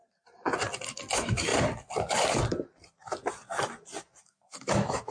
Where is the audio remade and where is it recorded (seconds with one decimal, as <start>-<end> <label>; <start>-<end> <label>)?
0.0-1.1 recorded; 1.1-1.5 remade; 1.5-4.2 recorded; 4.2-5.1 remade